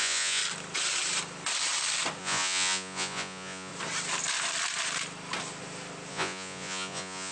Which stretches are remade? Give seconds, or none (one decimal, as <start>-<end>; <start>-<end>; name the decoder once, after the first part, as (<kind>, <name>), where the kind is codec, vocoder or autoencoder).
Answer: 0.0-0.4 (vocoder, Vocos); 2.2-3.7; 6.1-7.3

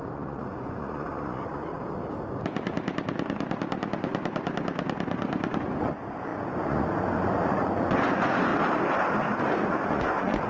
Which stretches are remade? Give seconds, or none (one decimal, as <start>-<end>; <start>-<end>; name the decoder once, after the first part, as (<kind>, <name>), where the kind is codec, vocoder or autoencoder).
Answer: 0.0-1.7 (vocoder, Vocos); 5.8-8.5; 9.4-10.5

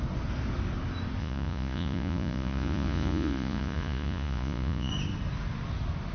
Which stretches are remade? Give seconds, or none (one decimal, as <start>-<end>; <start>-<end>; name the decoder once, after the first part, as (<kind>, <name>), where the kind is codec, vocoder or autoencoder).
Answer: 1.2-4.9 (vocoder, Vocos)

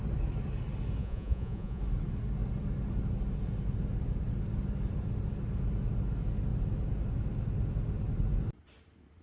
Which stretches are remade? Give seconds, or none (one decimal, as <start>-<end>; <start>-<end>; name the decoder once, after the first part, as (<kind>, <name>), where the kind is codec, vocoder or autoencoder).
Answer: 1.0-1.8 (vocoder, Vocos)

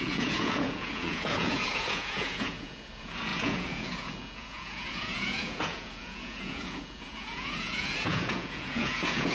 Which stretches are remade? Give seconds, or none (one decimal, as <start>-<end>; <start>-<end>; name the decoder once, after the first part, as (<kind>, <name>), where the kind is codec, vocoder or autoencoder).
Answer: 0.0-9.3 (vocoder, Vocos)

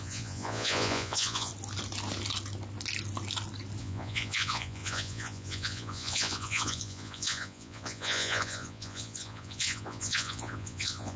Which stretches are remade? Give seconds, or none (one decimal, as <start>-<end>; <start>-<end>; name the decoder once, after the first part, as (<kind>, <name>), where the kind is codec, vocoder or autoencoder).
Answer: 0.0-1.5 (vocoder, Vocos); 3.8-11.2

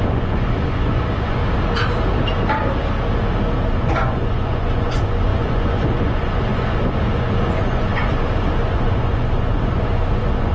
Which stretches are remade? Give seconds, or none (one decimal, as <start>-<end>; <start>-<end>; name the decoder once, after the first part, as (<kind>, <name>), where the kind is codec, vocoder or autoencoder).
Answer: 0.0-1.4 (vocoder, Vocos); 3.7-10.5